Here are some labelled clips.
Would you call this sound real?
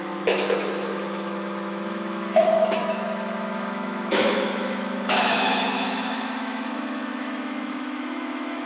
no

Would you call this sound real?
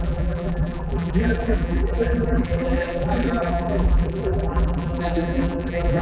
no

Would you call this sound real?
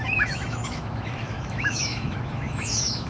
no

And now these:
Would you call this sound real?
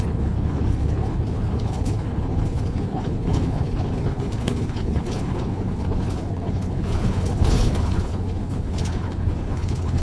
no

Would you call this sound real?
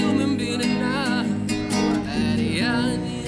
yes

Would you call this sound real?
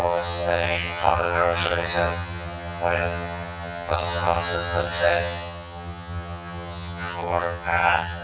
no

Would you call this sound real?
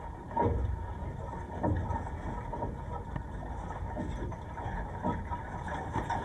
yes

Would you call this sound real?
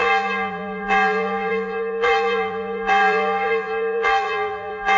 no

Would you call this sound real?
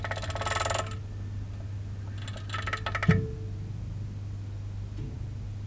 yes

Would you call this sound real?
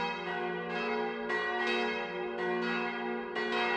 yes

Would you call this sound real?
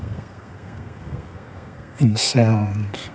no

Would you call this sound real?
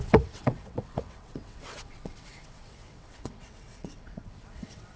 no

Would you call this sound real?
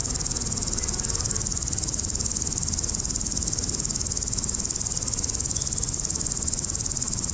yes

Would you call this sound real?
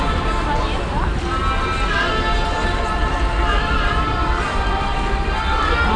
yes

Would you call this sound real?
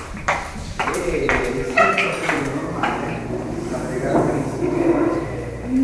no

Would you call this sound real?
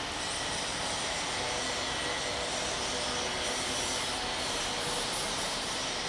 yes